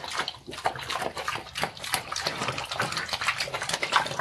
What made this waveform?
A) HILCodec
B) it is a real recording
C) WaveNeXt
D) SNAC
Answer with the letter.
B